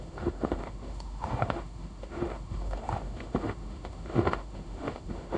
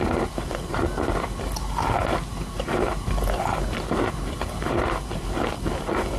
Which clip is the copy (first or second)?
first